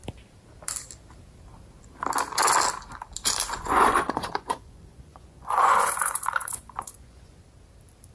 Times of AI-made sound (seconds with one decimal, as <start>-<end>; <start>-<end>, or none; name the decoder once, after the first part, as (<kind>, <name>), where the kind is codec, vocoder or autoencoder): 3.5-7.4 (vocoder, Vocos)